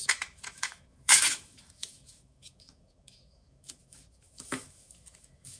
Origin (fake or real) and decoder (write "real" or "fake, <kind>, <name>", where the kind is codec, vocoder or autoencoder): fake, autoencoder, DAC-VAE